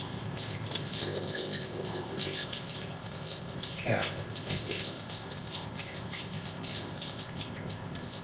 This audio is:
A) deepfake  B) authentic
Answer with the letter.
A